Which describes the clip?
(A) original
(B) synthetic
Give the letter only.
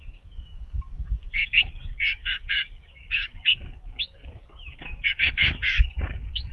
B